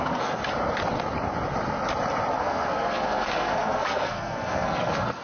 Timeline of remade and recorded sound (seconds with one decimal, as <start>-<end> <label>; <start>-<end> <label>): 0.0-0.4 remade; 0.4-2.4 recorded; 2.4-5.2 remade